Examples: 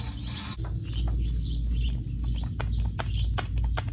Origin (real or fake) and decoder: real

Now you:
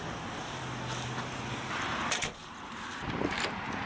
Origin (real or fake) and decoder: real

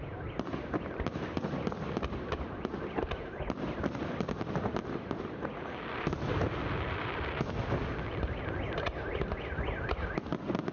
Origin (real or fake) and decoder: real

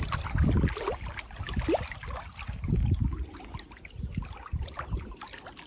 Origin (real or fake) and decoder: real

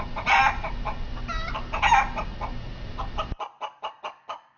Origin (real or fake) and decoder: real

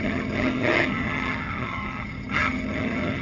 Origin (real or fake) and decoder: fake, vocoder, HiFi-GAN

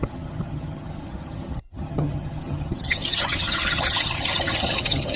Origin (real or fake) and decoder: fake, vocoder, HiFi-GAN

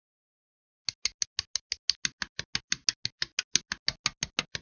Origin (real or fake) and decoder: real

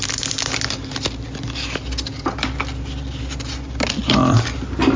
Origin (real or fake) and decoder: real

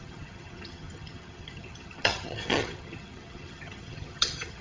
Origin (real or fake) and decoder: fake, vocoder, HiFi-GAN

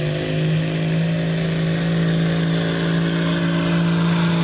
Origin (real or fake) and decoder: real